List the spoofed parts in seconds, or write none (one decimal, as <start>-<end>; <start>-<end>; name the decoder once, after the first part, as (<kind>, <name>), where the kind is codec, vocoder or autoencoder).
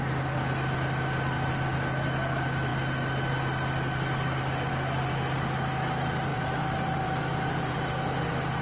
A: 6.3-7.7 (vocoder, BigVGAN v2)